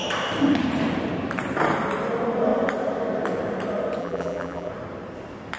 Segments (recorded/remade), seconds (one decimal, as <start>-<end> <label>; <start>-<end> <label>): 0.0-4.0 recorded; 4.0-4.7 remade; 4.7-5.6 recorded